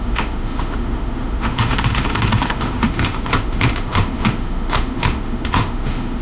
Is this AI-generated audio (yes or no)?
yes